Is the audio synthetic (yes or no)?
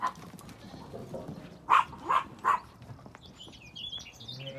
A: no